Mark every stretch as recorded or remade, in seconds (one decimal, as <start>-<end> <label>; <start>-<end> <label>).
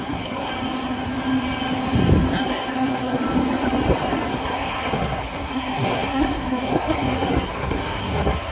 0.0-0.5 remade; 0.5-2.7 recorded; 2.7-3.2 remade; 3.2-4.3 recorded; 4.3-8.5 remade